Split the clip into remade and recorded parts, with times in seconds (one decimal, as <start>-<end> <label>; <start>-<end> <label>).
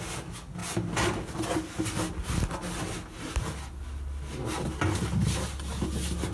0.0-6.3 recorded